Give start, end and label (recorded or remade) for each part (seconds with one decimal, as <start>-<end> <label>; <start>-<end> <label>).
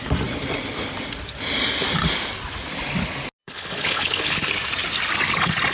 0.0-3.4 recorded; 3.4-4.5 remade; 4.5-5.7 recorded